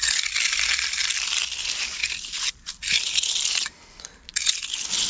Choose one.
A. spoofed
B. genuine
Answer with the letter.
B